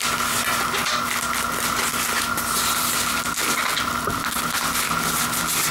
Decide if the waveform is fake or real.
real